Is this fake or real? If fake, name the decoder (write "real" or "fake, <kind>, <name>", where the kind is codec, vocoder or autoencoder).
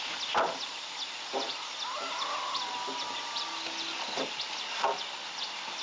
real